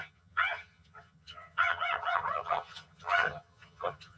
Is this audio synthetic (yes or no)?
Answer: yes